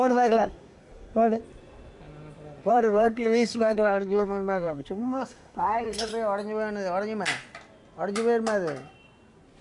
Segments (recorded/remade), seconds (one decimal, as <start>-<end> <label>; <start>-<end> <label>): 0.0-1.4 remade; 1.4-2.7 recorded; 2.7-6.1 remade; 6.1-9.6 recorded

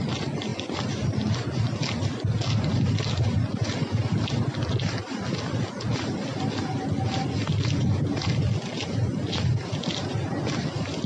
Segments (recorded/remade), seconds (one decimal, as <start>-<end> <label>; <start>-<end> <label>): 0.0-11.1 recorded